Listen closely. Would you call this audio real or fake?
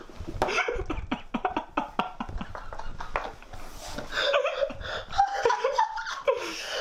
real